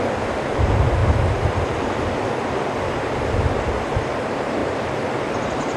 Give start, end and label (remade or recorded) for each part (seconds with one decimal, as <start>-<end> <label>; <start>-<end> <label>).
0.0-5.8 recorded